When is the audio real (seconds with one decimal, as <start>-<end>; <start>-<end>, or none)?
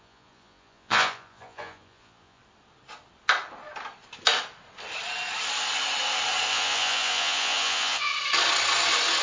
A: 2.4-6.5; 8.1-9.2